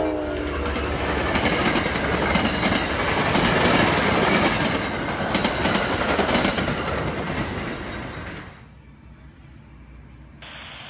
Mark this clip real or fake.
real